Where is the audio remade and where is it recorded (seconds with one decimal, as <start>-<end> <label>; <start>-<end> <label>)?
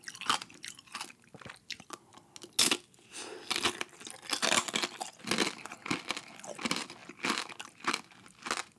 0.0-8.8 recorded